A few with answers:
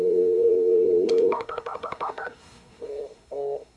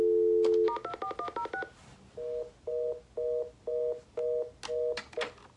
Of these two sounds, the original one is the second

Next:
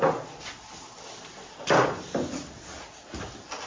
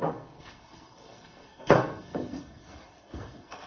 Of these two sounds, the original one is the first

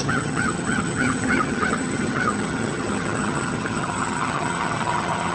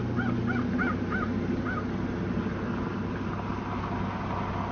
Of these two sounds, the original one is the second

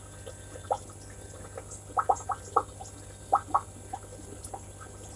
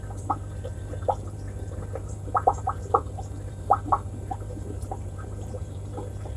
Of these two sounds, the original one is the first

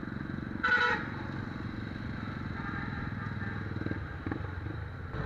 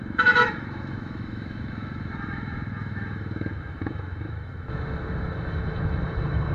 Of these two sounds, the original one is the first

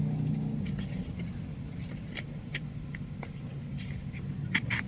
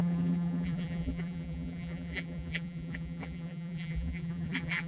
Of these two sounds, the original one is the first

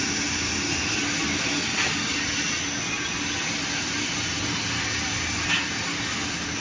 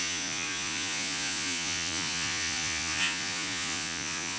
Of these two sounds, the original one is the first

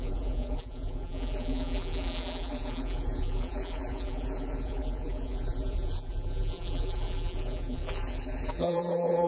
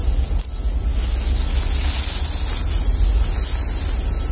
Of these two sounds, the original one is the second